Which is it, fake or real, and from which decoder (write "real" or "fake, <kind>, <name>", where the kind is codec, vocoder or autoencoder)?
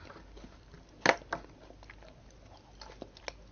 real